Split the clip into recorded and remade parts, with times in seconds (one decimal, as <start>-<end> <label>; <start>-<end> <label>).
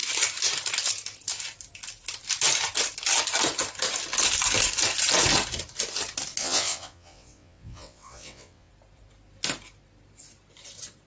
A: 0.0-6.4 recorded; 6.4-8.7 remade; 8.7-11.1 recorded